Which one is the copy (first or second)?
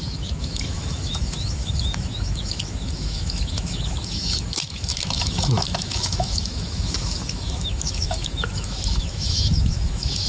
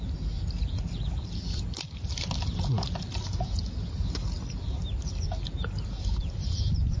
first